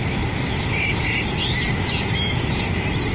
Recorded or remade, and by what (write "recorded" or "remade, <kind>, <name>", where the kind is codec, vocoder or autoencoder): recorded